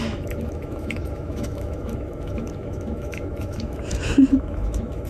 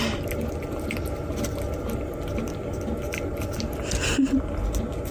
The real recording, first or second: second